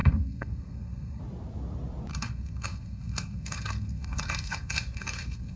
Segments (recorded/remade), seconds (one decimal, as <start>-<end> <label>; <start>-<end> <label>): 0.0-1.2 remade; 1.2-2.1 recorded; 2.1-5.6 remade